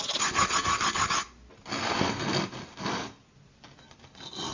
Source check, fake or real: real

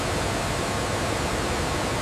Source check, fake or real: real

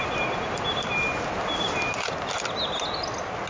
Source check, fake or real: real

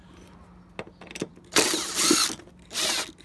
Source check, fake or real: real